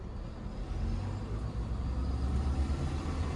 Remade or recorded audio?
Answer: recorded